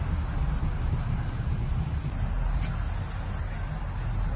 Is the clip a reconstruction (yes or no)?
no